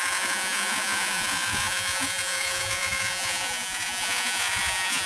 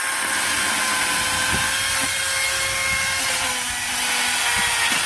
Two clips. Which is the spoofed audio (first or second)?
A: first